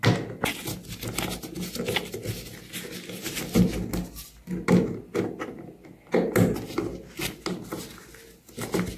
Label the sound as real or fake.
real